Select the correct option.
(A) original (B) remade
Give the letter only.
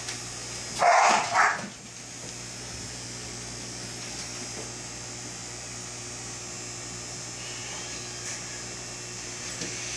A